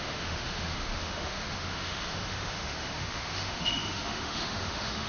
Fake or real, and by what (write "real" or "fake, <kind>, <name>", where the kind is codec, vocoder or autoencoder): fake, autoencoder, DAC-VAE